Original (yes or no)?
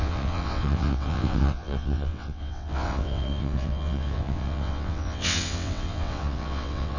no